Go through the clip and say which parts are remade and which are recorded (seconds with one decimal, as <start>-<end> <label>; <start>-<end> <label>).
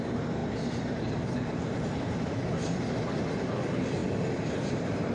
0.0-0.4 recorded; 0.4-1.1 remade; 1.1-4.0 recorded; 4.0-5.1 remade